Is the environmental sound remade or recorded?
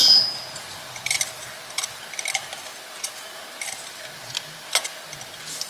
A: recorded